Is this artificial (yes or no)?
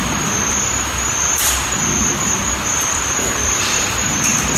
yes